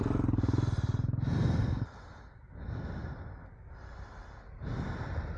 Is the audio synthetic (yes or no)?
no